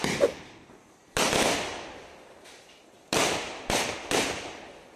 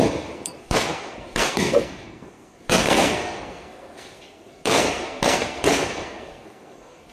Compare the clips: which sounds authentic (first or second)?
first